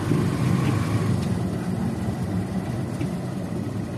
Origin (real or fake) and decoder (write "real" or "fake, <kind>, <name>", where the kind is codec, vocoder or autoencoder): real